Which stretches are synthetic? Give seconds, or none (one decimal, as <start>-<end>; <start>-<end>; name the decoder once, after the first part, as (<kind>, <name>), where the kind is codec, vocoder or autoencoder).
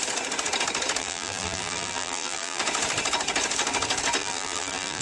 1.0-2.6 (vocoder, BigVGAN v2); 4.2-5.0